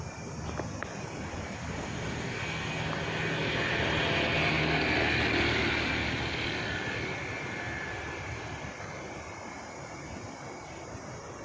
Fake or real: real